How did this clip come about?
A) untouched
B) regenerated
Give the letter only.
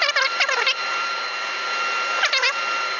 A